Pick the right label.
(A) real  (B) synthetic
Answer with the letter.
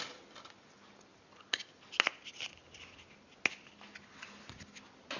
A